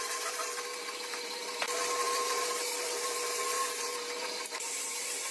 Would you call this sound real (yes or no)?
no